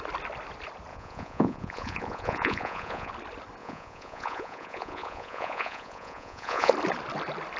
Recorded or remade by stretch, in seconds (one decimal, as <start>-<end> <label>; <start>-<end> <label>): 0.0-0.9 recorded; 0.9-3.1 remade; 3.1-3.6 recorded; 3.6-6.7 remade; 6.7-7.6 recorded